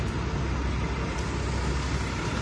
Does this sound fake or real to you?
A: real